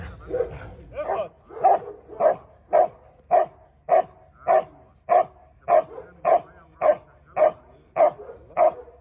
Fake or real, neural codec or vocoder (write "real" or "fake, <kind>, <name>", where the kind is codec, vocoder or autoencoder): real